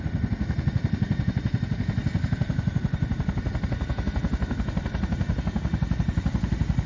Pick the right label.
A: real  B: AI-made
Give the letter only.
A